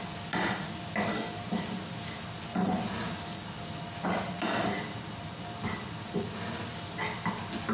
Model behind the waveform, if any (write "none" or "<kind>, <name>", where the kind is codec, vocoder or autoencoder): none